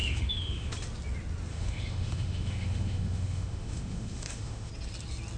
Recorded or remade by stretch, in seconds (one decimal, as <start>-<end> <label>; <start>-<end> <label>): 0.0-0.7 remade; 0.7-1.5 recorded; 1.5-4.7 remade; 4.7-5.4 recorded